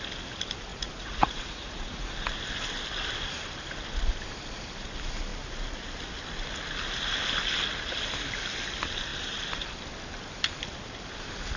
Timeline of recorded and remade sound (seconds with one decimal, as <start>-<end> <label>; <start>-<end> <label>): 0.0-0.7 recorded; 0.7-2.1 remade; 2.1-11.6 recorded